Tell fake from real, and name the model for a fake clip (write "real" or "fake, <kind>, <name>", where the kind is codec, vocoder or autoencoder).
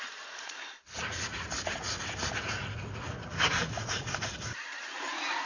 fake, vocoder, Vocos